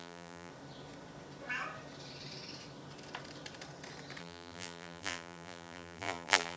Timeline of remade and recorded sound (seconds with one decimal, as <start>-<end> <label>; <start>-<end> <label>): 0.0-0.5 remade; 0.5-4.2 recorded; 4.2-6.6 remade

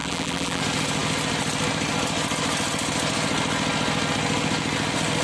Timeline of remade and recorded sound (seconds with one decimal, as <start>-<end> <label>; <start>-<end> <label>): 0.0-0.6 remade; 0.6-5.2 recorded

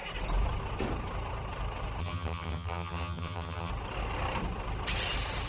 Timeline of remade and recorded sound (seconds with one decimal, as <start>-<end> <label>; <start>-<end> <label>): 0.0-2.0 recorded; 2.0-3.7 remade; 3.7-5.5 recorded

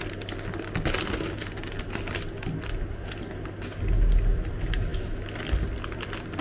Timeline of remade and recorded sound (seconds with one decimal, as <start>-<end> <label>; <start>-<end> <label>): 0.0-6.4 recorded

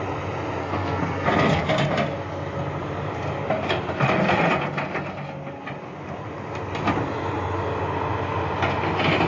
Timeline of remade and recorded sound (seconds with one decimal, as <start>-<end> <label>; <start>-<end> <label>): 0.0-0.6 recorded; 0.6-1.7 remade; 1.7-9.3 recorded